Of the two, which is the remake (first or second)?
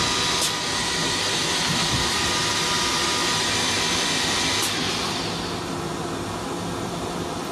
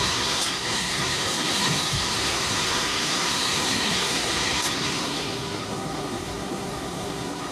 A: second